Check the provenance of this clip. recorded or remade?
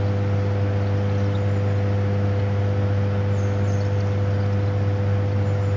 recorded